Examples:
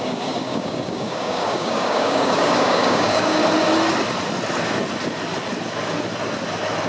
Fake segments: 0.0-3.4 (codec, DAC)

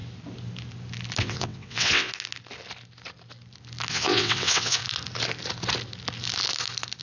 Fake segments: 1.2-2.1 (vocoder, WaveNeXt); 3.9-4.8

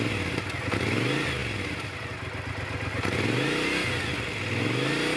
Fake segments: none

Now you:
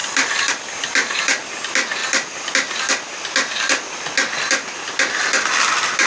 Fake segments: 0.0-0.5 (vocoder, BigVGAN v2); 2.0-2.5

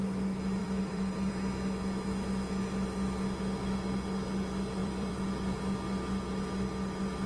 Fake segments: 0.6-1.3 (vocoder, BigVGAN v2); 4.8-5.5